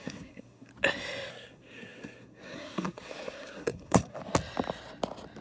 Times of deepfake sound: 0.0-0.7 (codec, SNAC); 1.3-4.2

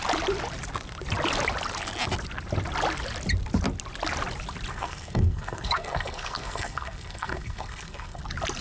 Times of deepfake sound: 4.7-8.2 (codec, SNAC)

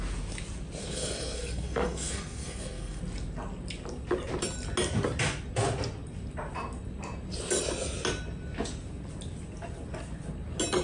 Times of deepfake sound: 0.8-3.0 (codec, SNAC)

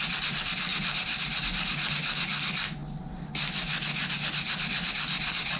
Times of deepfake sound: none

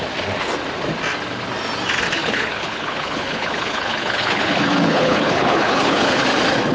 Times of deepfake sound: 2.2-6.2 (codec, HILCodec)